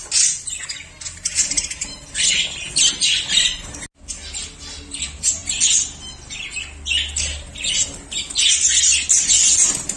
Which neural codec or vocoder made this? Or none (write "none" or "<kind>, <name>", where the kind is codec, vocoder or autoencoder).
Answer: none